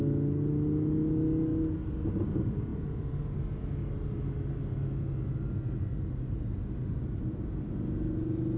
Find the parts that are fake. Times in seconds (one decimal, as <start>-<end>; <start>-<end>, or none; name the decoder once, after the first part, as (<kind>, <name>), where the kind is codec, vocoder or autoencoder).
none